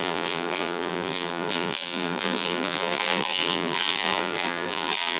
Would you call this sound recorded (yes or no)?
no